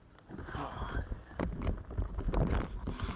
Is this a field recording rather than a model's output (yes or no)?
yes